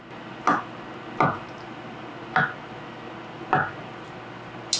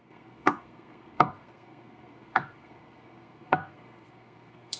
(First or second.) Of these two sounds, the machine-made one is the second